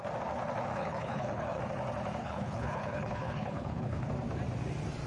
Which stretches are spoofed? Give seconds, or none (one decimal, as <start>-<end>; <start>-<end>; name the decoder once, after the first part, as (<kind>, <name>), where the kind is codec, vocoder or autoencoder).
0.7-1.6 (codec, HILCodec); 2.2-4.1